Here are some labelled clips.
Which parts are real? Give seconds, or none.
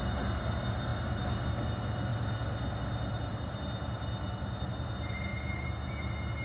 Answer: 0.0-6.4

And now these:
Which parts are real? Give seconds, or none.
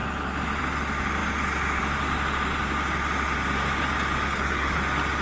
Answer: 0.0-4.3; 4.8-5.2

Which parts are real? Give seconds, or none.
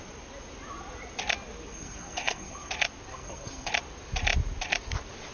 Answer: 0.0-1.7; 2.7-3.1; 3.7-5.3